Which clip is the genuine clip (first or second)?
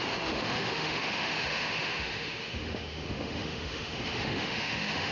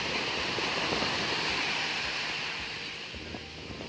second